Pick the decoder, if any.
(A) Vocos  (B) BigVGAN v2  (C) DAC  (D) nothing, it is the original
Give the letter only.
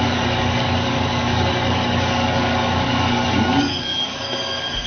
C